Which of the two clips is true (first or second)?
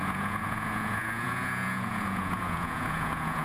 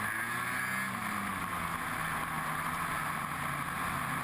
second